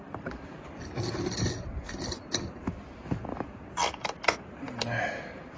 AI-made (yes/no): no